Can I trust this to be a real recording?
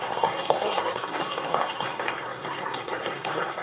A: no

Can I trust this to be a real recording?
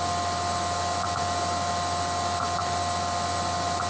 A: yes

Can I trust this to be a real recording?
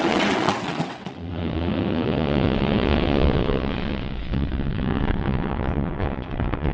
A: no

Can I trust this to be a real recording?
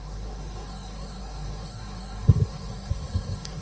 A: no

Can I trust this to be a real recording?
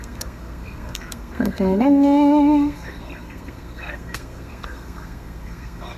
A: no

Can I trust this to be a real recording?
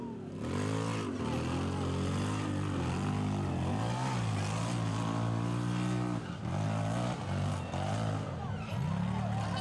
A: yes